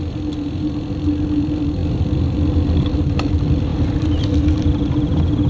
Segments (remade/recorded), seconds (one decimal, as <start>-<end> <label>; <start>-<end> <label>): 0.0-5.5 recorded